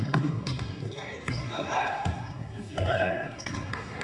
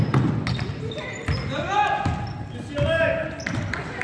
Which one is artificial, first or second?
first